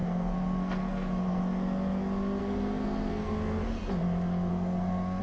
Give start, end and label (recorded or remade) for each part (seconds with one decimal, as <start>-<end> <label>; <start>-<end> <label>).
0.0-1.4 remade; 1.4-2.4 recorded; 2.4-3.3 remade; 3.3-4.5 recorded; 4.5-5.2 remade